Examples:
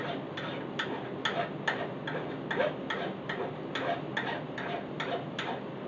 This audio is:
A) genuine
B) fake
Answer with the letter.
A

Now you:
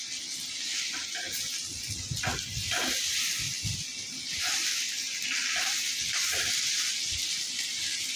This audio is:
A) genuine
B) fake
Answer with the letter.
A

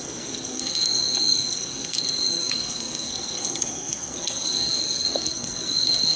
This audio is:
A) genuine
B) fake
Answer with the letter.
B